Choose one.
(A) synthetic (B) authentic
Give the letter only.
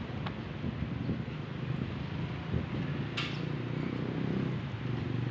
B